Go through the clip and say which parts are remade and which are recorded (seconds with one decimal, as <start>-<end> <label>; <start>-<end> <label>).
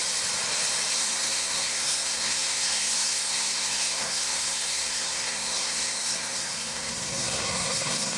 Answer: 0.0-0.9 recorded; 0.9-8.2 remade